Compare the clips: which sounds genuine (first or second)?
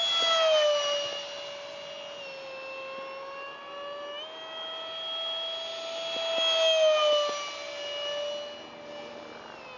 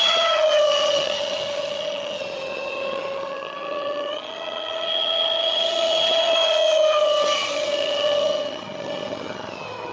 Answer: first